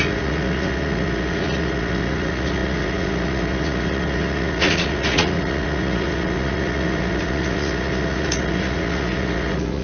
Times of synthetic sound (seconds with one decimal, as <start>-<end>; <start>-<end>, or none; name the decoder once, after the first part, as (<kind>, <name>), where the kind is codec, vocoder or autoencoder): 0.0-9.8 (vocoder, Vocos)